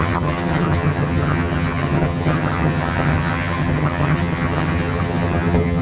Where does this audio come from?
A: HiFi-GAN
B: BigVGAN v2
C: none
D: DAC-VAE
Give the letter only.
A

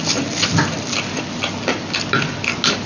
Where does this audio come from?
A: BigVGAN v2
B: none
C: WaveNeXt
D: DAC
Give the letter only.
B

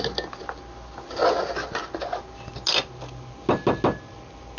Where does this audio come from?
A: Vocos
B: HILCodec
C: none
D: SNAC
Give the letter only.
C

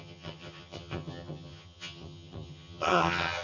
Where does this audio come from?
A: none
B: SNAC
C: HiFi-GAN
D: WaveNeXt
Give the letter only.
C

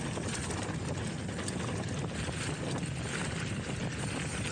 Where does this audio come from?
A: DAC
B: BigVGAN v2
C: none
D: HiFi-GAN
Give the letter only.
C